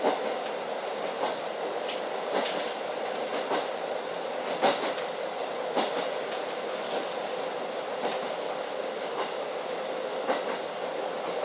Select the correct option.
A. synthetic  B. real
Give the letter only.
B